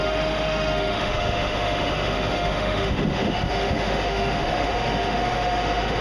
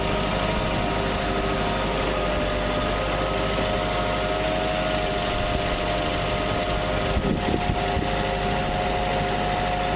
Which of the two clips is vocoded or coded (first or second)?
first